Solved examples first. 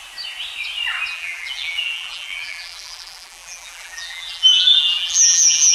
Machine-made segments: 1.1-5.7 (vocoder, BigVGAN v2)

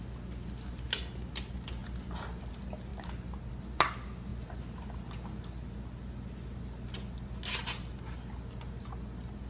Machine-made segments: 1.8-2.5 (vocoder, BigVGAN v2)

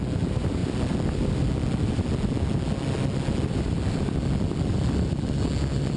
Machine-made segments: none